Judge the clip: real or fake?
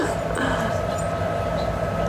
real